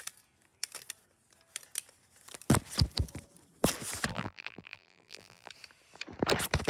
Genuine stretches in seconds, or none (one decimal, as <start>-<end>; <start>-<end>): 0.0-4.1; 5.5-6.7